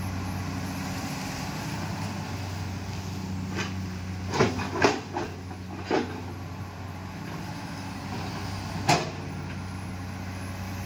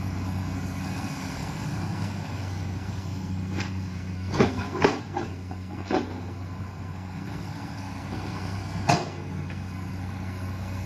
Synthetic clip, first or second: second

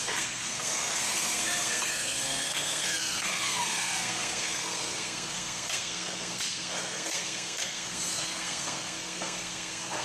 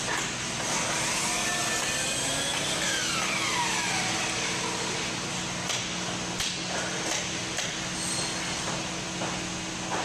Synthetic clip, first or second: first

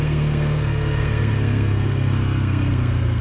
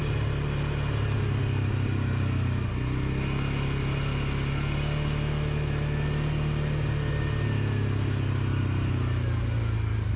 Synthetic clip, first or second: first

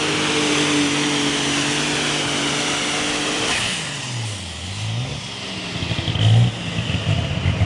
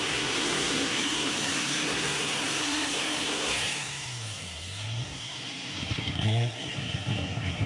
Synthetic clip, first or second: second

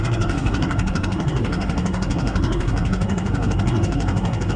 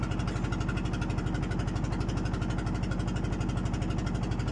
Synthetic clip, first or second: first